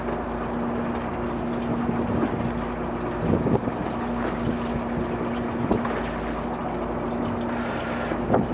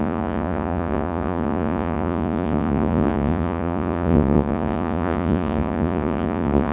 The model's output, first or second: second